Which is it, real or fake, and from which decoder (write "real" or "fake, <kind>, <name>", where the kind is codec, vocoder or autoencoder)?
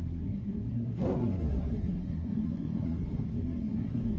fake, codec, SNAC